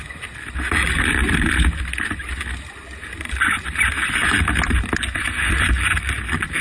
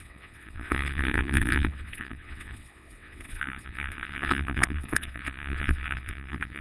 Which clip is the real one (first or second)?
first